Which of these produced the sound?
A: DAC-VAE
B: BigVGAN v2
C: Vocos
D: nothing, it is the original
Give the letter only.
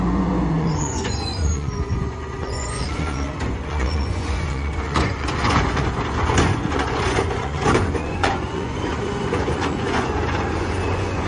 C